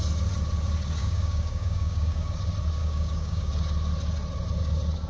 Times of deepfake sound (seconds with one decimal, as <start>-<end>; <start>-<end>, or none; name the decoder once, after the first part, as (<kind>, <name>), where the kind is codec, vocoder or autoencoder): 1.0-2.4 (codec, DAC); 2.8-3.5